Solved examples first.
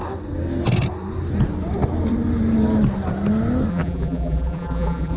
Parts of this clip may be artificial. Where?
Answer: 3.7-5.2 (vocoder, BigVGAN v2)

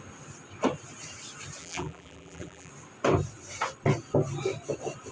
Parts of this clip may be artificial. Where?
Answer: 1.6-2.7 (vocoder, BigVGAN v2)

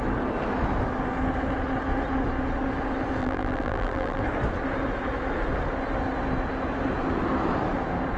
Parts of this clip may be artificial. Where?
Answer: 3.2-4.2 (vocoder, BigVGAN v2)

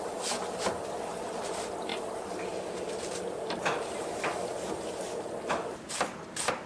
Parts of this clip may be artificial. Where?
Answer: none

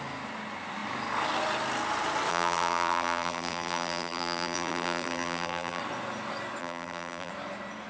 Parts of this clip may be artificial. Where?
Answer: 2.3-5.8 (vocoder, BigVGAN v2); 6.6-7.3

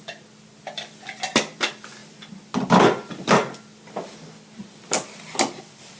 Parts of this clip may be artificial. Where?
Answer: none

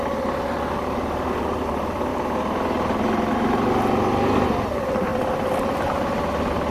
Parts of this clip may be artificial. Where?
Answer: none